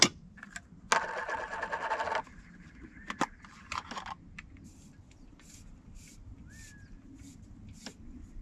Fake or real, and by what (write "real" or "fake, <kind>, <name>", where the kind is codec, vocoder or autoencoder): real